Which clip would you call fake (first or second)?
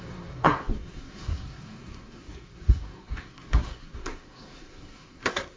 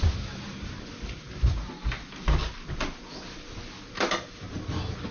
first